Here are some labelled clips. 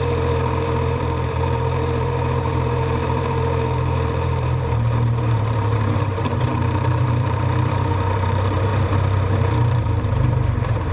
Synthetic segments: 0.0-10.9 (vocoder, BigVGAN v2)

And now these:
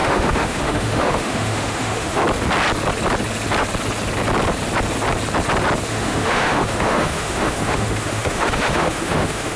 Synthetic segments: 0.0-2.2 (autoencoder, DAC-VAE); 5.9-9.6

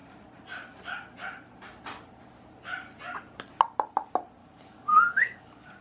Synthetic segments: 4.4-5.8 (codec, DAC)

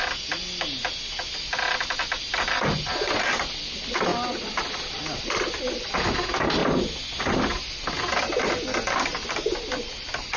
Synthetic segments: none